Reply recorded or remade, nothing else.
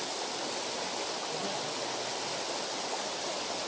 recorded